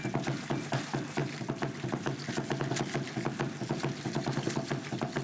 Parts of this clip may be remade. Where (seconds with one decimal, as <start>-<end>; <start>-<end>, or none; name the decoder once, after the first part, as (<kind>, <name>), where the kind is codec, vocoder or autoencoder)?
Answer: none